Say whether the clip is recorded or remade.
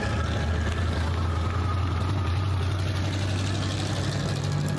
recorded